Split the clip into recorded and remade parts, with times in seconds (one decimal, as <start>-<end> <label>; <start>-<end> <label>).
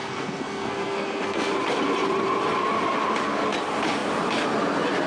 0.0-1.5 remade; 1.5-5.1 recorded